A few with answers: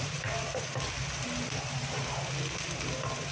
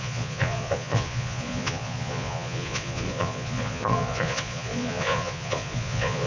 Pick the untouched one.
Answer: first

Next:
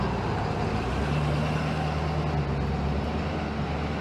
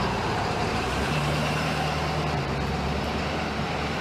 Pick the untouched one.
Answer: first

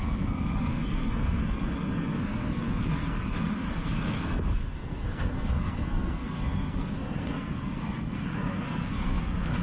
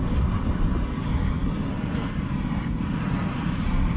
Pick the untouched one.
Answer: second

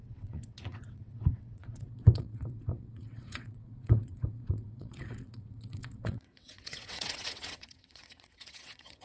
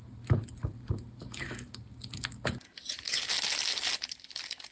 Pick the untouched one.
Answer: second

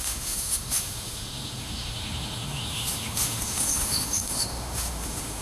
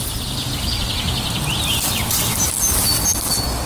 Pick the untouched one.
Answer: second